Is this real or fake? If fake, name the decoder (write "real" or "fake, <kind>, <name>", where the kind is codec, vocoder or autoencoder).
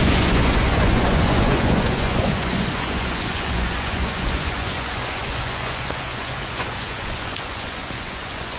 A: fake, vocoder, Vocos